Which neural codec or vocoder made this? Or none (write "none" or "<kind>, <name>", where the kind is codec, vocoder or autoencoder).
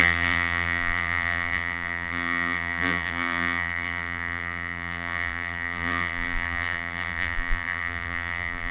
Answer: vocoder, BigVGAN v2